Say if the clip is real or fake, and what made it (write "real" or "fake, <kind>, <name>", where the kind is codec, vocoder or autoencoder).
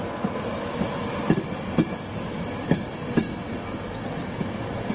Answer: real